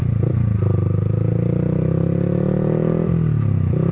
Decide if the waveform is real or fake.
real